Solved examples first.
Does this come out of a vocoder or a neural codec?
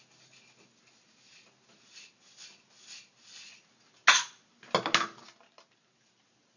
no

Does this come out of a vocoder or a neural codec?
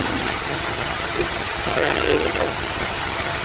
yes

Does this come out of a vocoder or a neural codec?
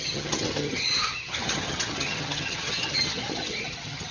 yes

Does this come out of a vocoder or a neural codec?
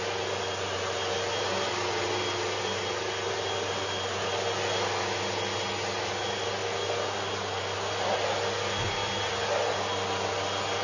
no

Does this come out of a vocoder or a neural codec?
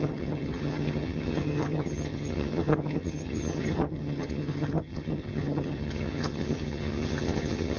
yes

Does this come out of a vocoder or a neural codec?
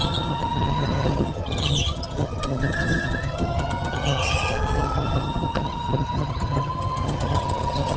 yes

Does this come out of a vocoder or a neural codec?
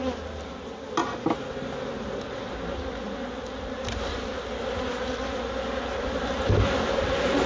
no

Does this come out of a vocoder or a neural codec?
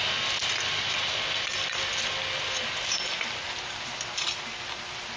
no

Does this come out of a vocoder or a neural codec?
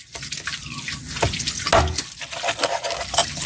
no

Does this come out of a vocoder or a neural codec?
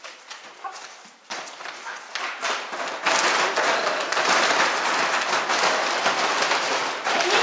no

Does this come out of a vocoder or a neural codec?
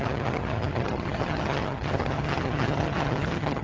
yes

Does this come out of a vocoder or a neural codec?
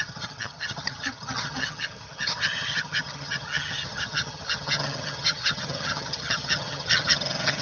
yes